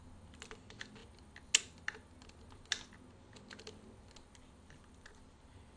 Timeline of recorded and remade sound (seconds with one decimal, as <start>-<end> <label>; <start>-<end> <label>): 0.0-5.8 recorded